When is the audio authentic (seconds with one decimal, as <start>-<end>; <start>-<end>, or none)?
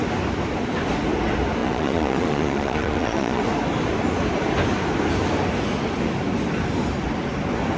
0.0-1.6; 3.4-7.8